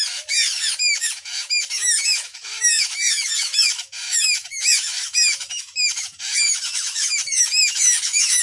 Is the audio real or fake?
fake